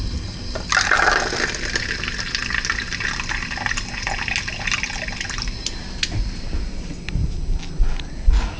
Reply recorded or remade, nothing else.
recorded